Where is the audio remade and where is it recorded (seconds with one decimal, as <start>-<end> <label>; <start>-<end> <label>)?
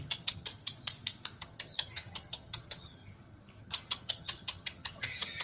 0.0-0.5 remade; 0.5-1.4 recorded; 1.4-3.0 remade; 3.0-3.6 recorded; 3.6-5.4 remade